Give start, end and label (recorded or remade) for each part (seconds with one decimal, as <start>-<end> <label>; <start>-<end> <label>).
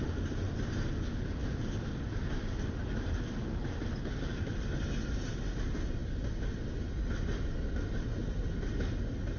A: 0.0-9.4 recorded